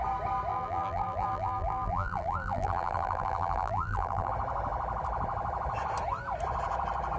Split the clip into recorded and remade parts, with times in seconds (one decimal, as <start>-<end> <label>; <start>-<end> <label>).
0.0-0.5 recorded; 0.5-4.3 remade; 4.3-7.2 recorded